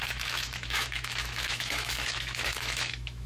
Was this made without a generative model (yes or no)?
no